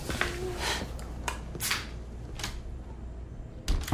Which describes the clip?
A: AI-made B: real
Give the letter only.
B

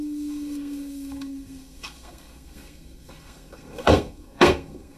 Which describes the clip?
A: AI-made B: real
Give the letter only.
A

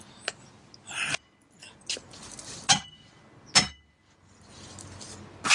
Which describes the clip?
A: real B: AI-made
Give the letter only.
A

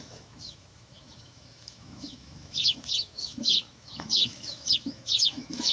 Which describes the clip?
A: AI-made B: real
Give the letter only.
A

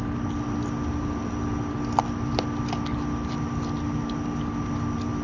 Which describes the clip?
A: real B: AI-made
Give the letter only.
A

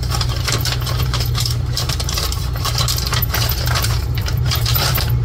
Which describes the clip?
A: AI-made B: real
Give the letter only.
A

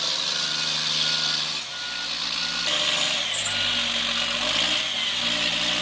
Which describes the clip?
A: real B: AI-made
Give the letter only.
A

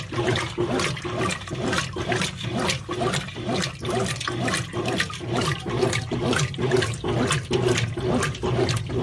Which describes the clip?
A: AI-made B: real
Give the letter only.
B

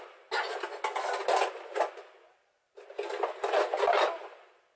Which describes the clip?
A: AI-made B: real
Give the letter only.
B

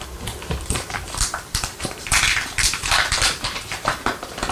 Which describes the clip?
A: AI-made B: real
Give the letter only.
A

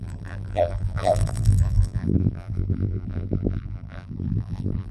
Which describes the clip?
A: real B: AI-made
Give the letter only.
B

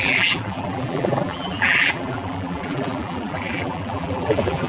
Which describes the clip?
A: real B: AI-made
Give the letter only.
B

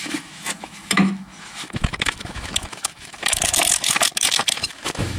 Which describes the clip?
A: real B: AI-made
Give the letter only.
B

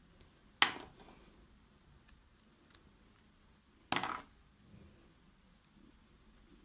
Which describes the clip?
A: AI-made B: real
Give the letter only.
B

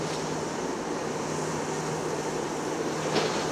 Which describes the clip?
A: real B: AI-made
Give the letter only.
A